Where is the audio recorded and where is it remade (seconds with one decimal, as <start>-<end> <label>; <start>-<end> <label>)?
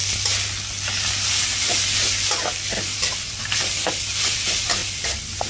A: 0.0-5.5 recorded